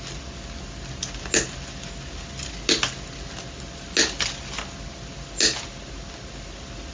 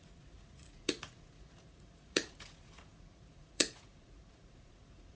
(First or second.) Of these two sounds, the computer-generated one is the second